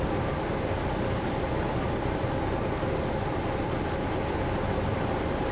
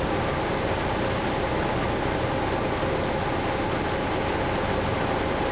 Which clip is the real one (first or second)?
second